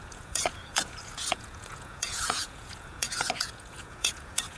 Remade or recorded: remade